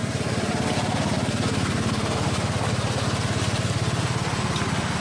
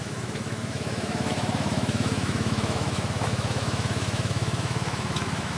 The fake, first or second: second